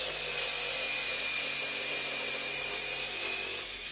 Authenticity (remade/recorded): recorded